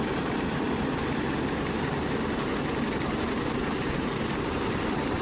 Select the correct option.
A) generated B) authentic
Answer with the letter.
B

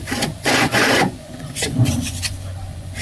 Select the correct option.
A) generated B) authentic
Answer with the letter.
A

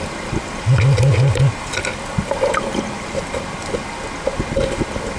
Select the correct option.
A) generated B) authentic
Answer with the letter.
B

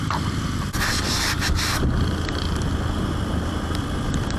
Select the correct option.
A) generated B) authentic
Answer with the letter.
B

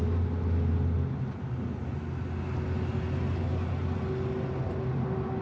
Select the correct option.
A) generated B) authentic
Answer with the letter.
B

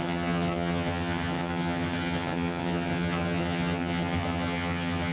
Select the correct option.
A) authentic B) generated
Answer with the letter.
B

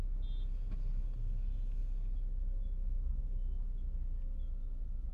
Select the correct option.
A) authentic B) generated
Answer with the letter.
A